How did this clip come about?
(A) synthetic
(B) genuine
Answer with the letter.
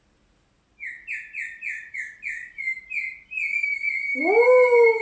B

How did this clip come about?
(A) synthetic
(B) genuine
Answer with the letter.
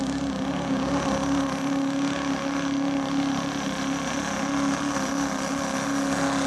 B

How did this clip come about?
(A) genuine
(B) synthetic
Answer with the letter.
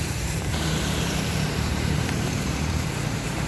B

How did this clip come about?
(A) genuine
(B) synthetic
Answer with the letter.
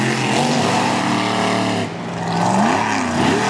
A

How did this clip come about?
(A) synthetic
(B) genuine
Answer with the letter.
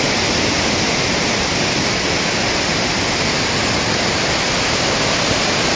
B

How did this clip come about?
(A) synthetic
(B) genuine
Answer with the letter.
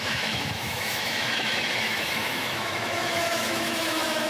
A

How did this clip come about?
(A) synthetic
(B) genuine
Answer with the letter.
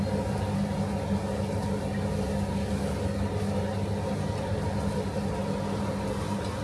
B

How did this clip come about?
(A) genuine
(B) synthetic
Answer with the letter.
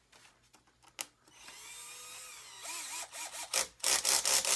A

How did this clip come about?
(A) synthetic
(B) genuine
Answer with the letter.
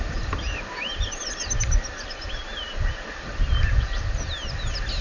B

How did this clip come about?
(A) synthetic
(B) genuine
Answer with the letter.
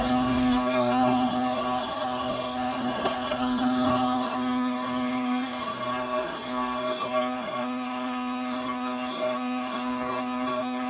A